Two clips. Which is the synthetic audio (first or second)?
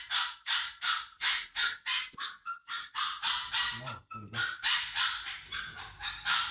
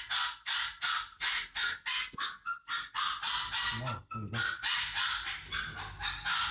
first